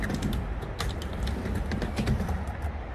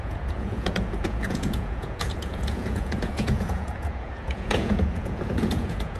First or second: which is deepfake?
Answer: second